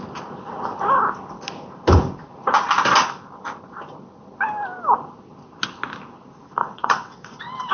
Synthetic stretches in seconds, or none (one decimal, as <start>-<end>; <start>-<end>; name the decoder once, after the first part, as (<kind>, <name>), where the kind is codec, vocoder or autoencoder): 6.6-7.7 (vocoder, WaveNeXt)